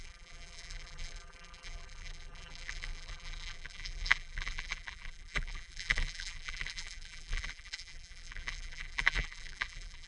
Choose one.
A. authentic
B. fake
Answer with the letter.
B